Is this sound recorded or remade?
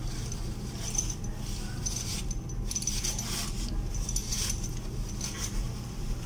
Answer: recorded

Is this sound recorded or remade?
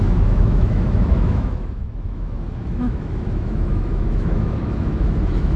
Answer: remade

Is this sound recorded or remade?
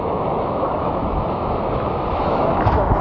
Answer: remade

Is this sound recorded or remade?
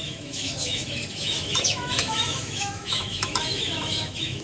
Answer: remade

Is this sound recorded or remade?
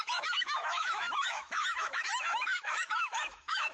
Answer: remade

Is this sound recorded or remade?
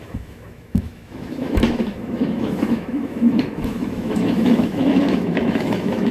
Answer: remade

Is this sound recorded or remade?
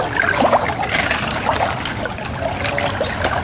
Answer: recorded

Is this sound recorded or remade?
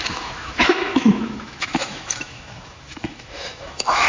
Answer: remade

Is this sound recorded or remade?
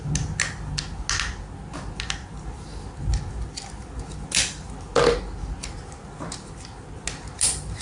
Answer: recorded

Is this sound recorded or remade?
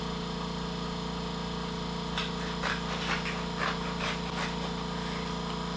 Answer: recorded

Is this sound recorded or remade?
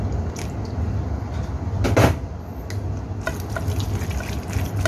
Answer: recorded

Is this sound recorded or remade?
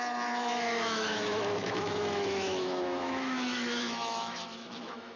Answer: remade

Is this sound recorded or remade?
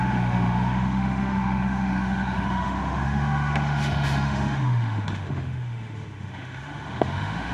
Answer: remade